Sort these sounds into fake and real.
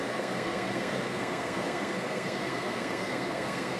fake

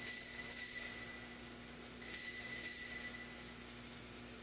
real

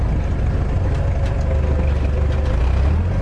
real